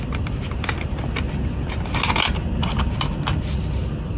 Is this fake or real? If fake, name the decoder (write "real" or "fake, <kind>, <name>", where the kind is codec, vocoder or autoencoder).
real